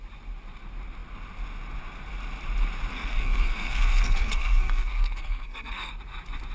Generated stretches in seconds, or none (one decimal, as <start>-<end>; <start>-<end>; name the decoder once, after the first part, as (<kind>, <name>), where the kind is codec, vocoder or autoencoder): 2.9-5.9 (codec, SNAC)